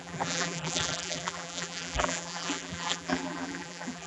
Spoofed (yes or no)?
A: yes